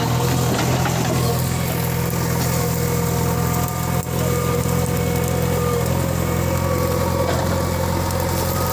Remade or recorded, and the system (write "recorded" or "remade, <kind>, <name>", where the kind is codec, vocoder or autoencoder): recorded